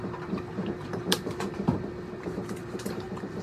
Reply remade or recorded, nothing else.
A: remade